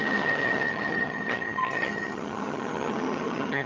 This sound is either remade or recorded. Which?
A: remade